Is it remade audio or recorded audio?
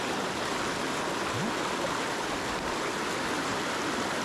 recorded